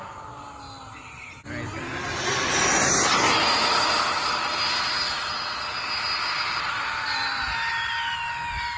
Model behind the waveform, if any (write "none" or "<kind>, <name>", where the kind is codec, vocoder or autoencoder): none